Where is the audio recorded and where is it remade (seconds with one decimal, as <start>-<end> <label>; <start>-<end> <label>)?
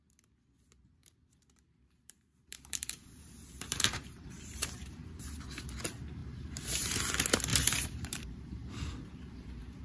0.0-1.0 recorded; 1.0-5.6 remade; 5.6-6.2 recorded; 6.2-7.0 remade; 7.0-7.5 recorded; 7.5-9.8 remade